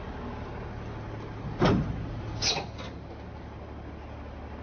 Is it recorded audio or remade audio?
recorded